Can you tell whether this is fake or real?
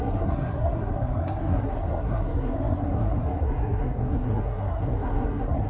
fake